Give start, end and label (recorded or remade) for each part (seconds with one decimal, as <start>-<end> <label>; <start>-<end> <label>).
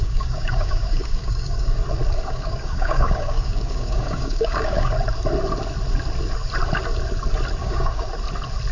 0.0-1.8 remade; 1.8-2.2 recorded; 2.2-4.9 remade; 4.9-7.6 recorded; 7.6-8.1 remade; 8.1-8.7 recorded